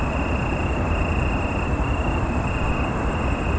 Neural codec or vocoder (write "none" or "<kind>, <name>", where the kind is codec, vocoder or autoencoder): none